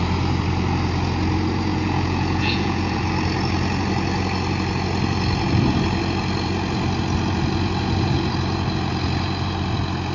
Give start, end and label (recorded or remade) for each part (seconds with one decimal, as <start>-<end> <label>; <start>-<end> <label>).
0.0-1.7 recorded; 1.7-3.0 remade; 3.0-10.1 recorded